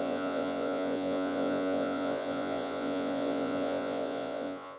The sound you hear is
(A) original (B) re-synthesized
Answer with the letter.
B